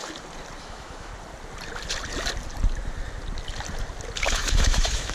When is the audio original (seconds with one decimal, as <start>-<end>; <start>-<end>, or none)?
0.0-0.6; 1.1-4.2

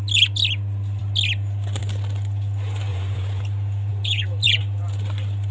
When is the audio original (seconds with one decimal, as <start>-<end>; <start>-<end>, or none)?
0.0-2.9; 3.4-3.9; 4.6-5.5

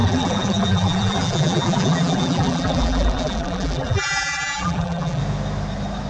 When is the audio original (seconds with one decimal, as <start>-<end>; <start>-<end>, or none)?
5.2-6.1